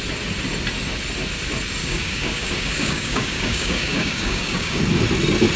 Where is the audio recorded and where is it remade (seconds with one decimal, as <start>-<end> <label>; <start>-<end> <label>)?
0.0-1.8 recorded; 1.8-4.8 remade; 4.8-5.6 recorded